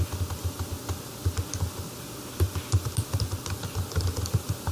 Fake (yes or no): yes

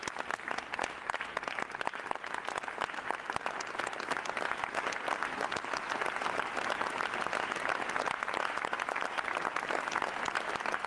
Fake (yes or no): no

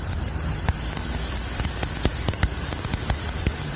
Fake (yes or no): yes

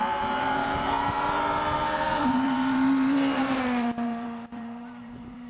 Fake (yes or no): yes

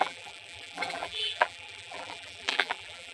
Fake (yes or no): yes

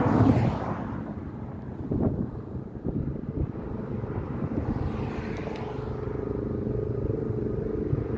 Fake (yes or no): no